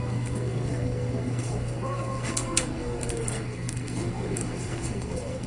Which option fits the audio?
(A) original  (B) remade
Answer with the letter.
B